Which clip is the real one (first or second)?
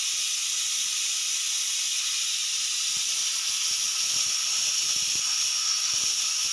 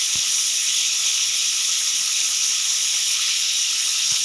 first